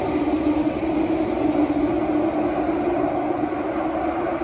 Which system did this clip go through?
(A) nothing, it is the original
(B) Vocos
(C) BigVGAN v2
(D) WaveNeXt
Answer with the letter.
A